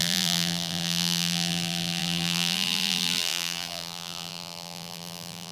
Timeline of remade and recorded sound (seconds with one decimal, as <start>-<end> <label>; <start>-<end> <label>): 0.0-5.5 remade